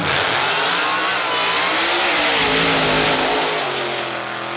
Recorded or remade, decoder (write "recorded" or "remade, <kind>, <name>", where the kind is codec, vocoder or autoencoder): recorded